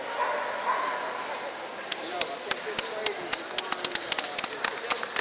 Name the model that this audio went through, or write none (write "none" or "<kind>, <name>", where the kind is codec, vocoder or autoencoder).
none